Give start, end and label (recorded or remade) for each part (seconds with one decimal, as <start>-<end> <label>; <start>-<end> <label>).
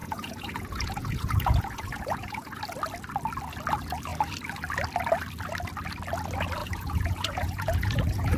0.0-2.6 remade; 2.6-6.6 recorded; 6.6-8.4 remade